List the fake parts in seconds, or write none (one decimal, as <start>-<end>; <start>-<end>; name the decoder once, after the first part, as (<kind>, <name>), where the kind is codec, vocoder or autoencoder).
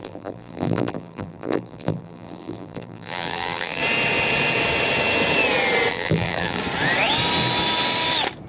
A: 0.0-3.8 (vocoder, BigVGAN v2); 5.9-6.6